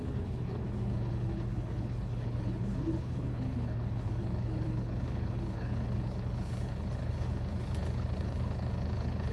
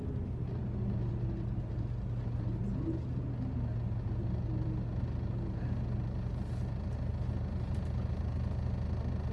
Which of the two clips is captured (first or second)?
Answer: second